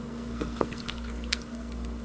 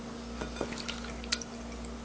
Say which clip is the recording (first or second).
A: second